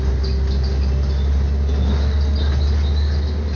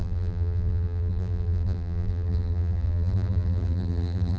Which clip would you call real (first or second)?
first